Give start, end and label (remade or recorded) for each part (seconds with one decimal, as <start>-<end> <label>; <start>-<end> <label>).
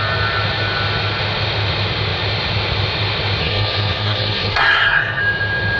0.0-3.4 recorded; 3.4-5.2 remade; 5.2-5.8 recorded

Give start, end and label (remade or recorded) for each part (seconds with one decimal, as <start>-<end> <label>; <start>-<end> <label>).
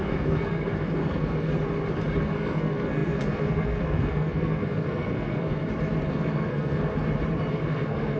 0.0-1.5 remade; 1.5-2.2 recorded; 2.2-5.6 remade; 5.6-6.1 recorded; 6.1-6.9 remade; 6.9-7.5 recorded; 7.5-8.2 remade